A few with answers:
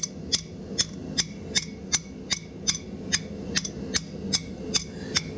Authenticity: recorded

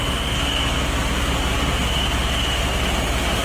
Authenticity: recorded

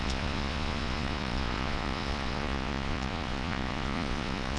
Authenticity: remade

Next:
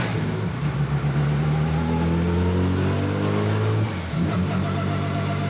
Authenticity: recorded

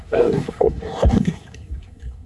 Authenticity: remade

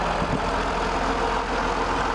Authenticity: recorded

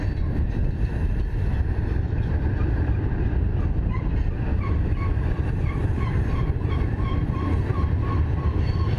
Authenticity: remade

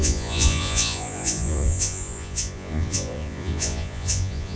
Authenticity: remade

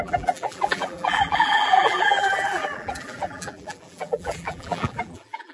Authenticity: remade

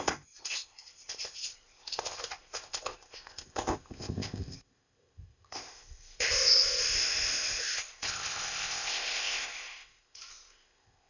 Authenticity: remade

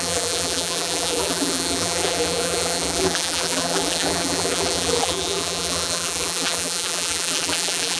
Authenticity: remade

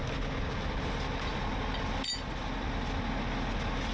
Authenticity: recorded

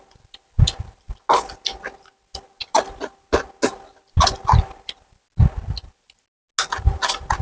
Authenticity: recorded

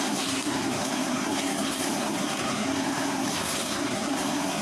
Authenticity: remade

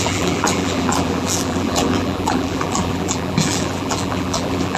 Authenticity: remade